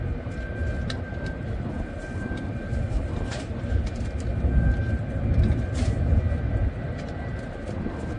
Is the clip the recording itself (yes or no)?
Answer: yes